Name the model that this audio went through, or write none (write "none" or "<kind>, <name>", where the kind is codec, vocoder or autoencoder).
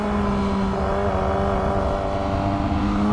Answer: none